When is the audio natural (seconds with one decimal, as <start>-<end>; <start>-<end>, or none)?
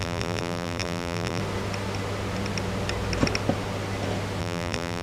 1.4-4.4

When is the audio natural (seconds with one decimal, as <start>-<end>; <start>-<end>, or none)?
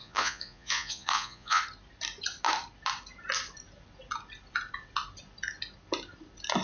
1.6-6.6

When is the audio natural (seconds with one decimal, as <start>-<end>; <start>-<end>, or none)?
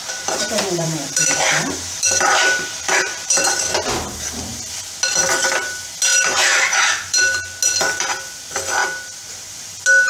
3.6-6.1; 7.2-8.8; 9.5-10.1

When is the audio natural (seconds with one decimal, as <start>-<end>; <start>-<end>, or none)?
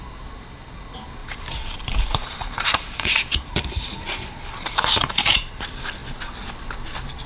0.0-1.2; 5.6-7.3